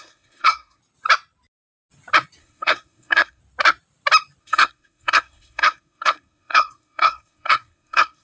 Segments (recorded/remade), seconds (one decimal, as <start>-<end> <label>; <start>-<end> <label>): 0.0-0.8 remade; 0.8-2.4 recorded; 2.4-3.4 remade; 3.4-4.4 recorded; 4.4-8.2 remade